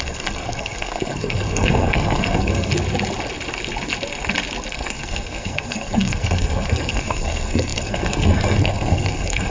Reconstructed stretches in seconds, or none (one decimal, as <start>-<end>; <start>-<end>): 0.0-2.7; 4.7-9.5